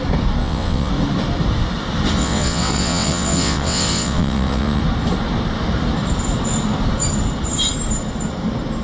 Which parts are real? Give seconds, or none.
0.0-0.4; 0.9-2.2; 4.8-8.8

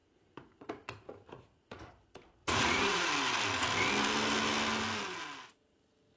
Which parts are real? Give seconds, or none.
1.9-2.4; 3.1-6.2